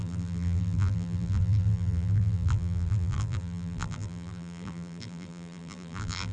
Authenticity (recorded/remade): remade